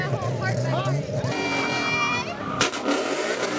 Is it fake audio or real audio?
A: fake